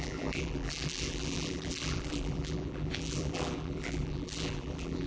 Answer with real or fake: fake